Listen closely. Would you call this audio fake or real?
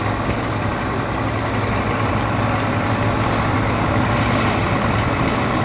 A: real